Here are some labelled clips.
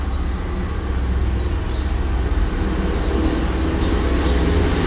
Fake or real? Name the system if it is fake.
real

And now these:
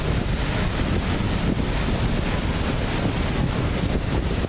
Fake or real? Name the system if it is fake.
real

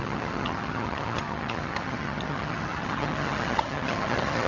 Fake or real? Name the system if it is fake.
fake, vocoder, HiFi-GAN